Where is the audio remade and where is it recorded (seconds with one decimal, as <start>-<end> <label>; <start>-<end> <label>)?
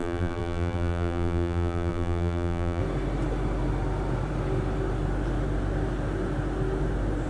0.0-2.8 remade; 2.8-7.3 recorded